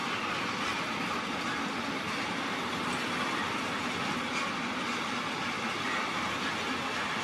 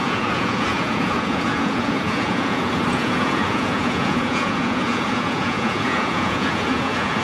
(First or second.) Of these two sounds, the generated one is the second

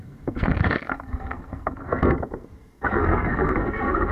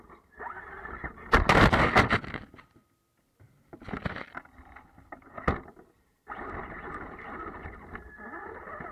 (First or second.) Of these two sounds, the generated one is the first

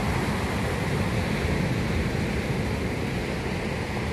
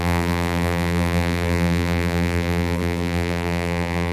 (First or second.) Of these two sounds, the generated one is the second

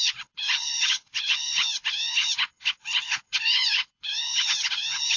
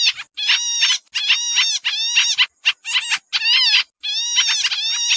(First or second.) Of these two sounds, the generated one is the first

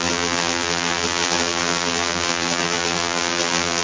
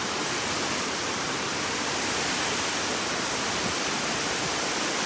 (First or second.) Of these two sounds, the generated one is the first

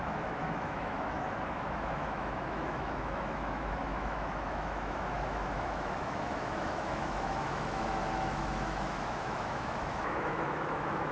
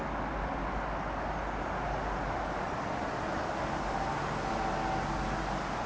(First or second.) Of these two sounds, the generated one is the first